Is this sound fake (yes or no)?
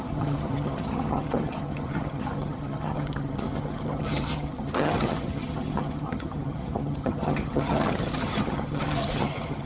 yes